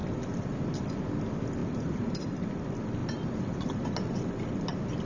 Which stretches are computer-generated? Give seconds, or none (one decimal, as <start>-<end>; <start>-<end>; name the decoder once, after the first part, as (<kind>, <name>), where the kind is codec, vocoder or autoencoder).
1.6-2.5 (vocoder, BigVGAN v2); 3.0-3.8